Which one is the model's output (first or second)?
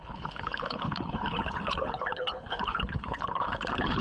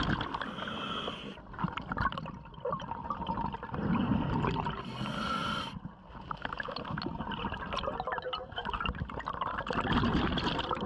first